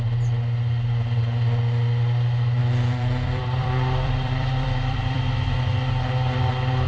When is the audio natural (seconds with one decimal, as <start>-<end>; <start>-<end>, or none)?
0.0-2.6; 5.2-6.9

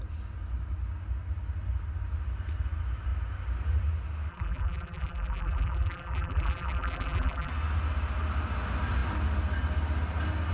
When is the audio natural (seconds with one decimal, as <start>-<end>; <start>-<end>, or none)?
0.0-4.3; 7.5-10.5

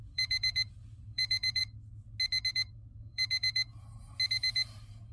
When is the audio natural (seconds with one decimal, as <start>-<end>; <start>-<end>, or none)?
1.6-2.5; 3.7-4.3

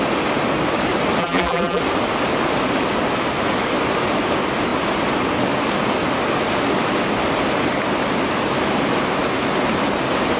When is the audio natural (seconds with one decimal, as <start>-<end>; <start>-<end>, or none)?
0.0-1.2; 1.8-10.4

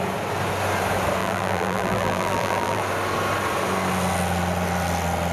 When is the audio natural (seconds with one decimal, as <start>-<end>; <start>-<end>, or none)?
0.0-1.2; 2.8-5.3

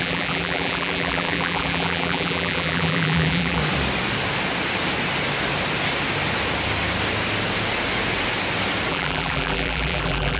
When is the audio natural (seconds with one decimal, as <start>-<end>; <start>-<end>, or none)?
3.6-8.9

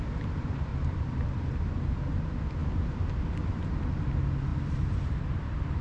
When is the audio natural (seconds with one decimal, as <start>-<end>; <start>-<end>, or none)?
0.0-0.7; 1.7-4.5